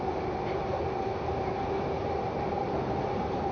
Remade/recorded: recorded